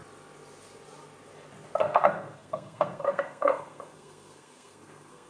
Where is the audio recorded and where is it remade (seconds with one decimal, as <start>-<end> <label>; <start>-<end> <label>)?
0.0-1.8 recorded; 1.8-5.3 remade